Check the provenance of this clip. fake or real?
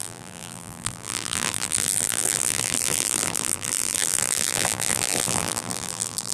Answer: fake